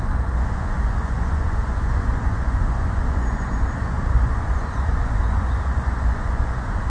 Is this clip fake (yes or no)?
yes